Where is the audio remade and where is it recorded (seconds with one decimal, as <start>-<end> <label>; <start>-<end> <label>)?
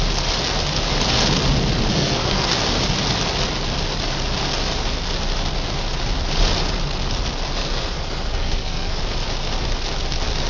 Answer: 0.0-1.9 recorded; 1.9-2.5 remade; 2.5-7.6 recorded; 7.6-9.0 remade; 9.0-10.5 recorded